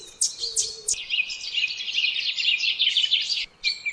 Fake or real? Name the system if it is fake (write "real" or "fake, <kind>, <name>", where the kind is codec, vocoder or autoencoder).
real